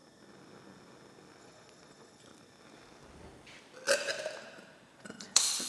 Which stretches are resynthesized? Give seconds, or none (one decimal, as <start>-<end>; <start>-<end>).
1.4-2.3; 5.0-5.7